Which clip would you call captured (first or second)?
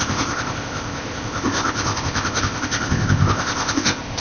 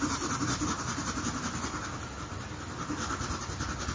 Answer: second